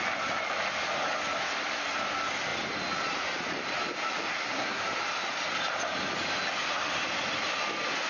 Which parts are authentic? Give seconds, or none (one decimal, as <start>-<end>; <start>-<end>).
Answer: 0.0-4.3; 4.8-8.1